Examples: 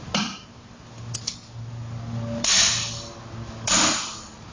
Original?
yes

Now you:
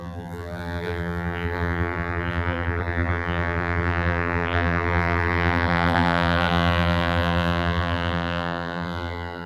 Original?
no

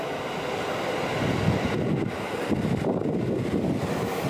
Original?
yes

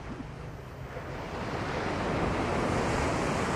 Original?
yes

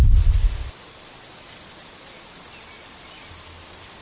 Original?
yes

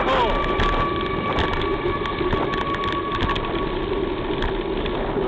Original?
yes